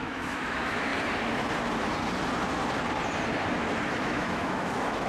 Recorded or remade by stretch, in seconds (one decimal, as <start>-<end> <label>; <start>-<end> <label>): 0.0-0.9 remade; 0.9-4.0 recorded; 4.0-5.1 remade